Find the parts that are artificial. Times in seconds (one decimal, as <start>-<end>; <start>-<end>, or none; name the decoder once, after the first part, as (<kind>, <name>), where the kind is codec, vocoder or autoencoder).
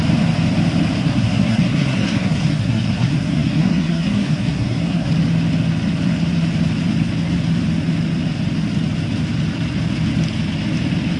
1.0-5.1 (codec, SNAC)